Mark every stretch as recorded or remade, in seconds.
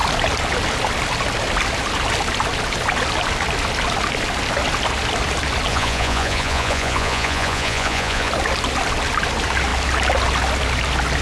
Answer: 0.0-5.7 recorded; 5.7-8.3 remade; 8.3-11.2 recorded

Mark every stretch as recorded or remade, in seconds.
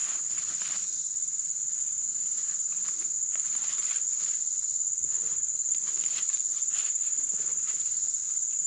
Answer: 0.0-1.8 remade; 1.8-3.2 recorded; 3.2-6.9 remade; 6.9-8.7 recorded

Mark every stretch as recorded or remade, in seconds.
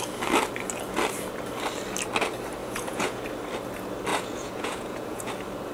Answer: 0.0-2.6 recorded; 2.6-3.2 remade; 3.2-4.1 recorded; 4.1-5.3 remade; 5.3-5.7 recorded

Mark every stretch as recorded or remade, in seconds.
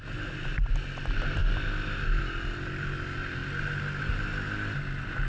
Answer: 0.0-5.3 recorded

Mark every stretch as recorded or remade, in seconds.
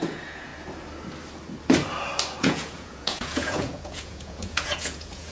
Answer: 0.0-0.5 remade; 0.5-2.4 recorded; 2.4-5.3 remade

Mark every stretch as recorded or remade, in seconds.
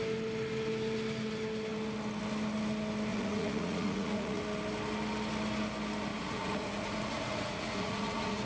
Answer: 0.0-3.1 recorded; 3.1-4.4 remade; 4.4-6.1 recorded; 6.1-8.4 remade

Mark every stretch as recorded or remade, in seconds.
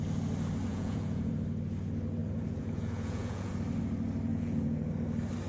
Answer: 0.0-0.7 recorded; 0.7-1.3 remade; 1.3-2.2 recorded; 2.2-3.5 remade; 3.5-4.3 recorded; 4.3-4.9 remade; 4.9-5.5 recorded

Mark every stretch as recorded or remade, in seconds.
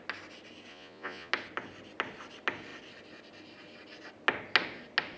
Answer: 0.0-0.7 recorded; 0.7-1.3 remade; 1.3-5.2 recorded